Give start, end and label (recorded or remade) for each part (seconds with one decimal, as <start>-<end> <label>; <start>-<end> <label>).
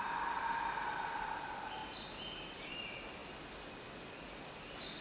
0.0-1.8 recorded; 1.8-2.7 remade; 2.7-5.0 recorded